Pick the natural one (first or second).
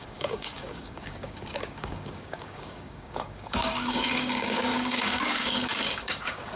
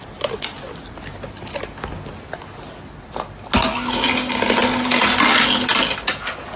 second